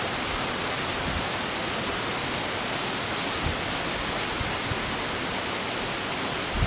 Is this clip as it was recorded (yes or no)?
yes